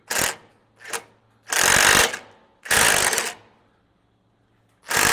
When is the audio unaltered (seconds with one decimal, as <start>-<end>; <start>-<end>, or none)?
0.0-5.1